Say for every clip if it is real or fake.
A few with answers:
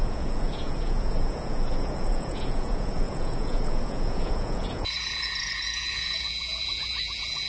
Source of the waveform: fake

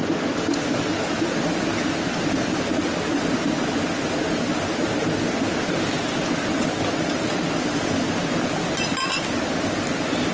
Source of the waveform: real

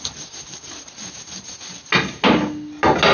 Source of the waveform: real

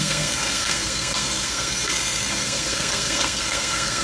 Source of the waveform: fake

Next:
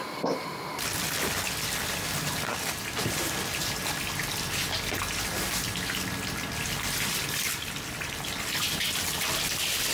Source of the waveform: real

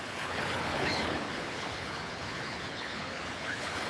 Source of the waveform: fake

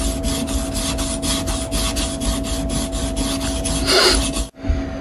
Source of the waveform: real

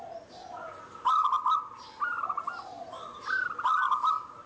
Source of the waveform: real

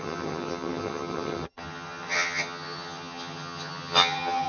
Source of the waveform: fake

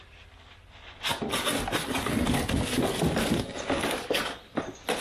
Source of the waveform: real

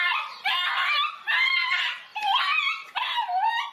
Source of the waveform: real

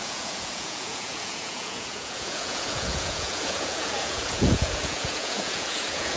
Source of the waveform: fake